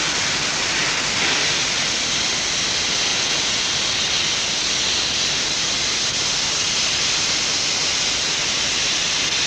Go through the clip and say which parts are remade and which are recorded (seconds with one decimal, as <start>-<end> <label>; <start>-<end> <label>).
0.0-3.1 recorded; 3.1-3.7 remade; 3.7-9.5 recorded